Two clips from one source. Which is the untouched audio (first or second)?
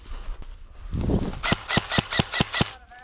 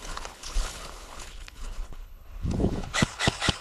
first